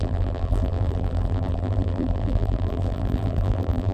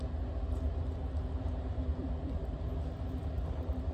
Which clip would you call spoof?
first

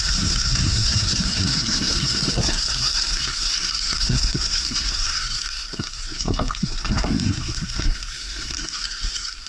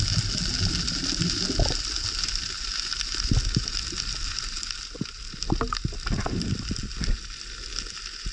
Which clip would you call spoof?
first